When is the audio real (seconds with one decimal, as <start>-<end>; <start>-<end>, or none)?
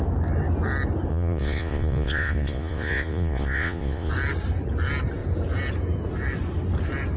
0.0-1.1; 4.1-7.2